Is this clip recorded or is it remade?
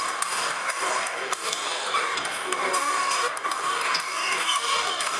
remade